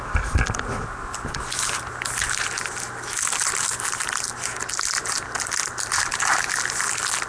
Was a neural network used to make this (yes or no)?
no